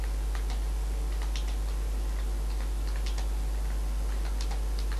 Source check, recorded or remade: recorded